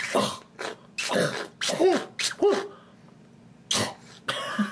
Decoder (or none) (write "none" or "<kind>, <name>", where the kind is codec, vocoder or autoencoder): none